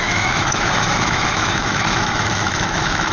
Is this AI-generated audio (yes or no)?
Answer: yes